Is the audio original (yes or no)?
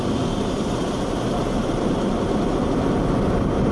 yes